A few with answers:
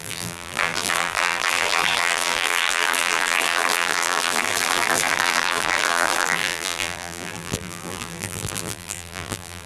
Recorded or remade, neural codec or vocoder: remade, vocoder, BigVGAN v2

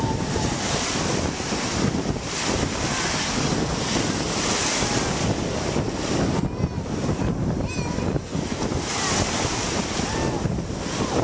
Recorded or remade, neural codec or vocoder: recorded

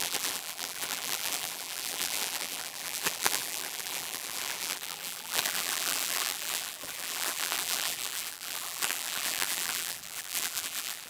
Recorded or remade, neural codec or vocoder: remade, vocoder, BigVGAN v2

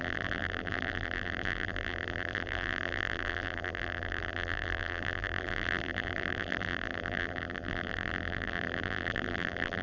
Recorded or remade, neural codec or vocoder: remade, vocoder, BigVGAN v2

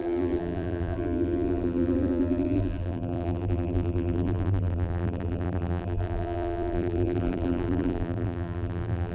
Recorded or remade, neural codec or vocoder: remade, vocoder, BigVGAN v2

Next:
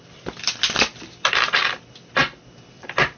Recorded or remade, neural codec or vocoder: recorded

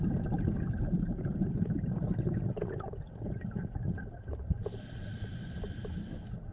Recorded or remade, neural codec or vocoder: recorded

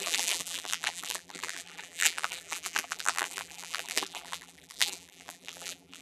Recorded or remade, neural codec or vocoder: remade, vocoder, BigVGAN v2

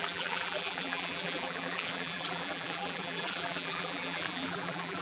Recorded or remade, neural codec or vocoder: remade, vocoder, BigVGAN v2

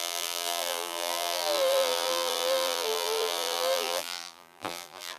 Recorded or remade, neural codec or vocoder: remade, vocoder, BigVGAN v2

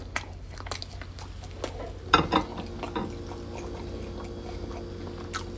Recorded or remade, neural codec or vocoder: recorded